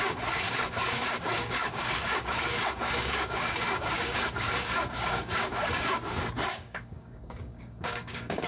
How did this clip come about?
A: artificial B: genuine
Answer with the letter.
A